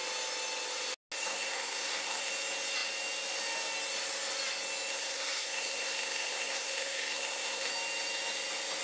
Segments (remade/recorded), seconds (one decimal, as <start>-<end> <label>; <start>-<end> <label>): 0.0-1.2 recorded; 1.2-2.3 remade; 2.3-4.9 recorded; 4.9-7.7 remade; 7.7-8.8 recorded